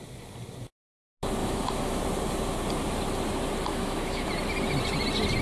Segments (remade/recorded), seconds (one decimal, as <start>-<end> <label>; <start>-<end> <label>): 0.0-1.4 recorded; 1.4-2.0 remade; 2.0-3.7 recorded; 3.7-4.3 remade; 4.3-5.4 recorded

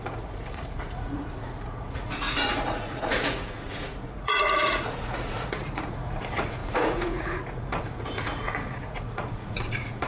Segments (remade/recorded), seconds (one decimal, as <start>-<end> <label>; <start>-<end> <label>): 0.0-10.1 remade

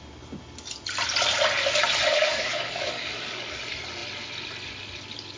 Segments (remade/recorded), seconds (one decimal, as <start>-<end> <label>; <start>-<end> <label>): 0.0-2.1 recorded; 2.1-3.6 remade; 3.6-5.4 recorded